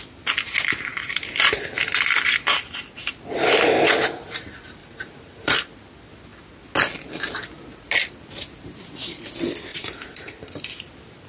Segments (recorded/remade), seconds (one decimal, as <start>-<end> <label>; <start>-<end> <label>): 0.0-4.8 recorded; 4.8-5.7 remade; 5.7-9.7 recorded; 9.7-10.9 remade; 10.9-11.3 recorded